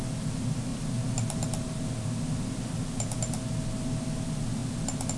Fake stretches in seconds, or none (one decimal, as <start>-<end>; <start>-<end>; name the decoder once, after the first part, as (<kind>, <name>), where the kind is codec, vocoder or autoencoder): none